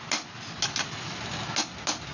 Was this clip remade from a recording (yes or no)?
no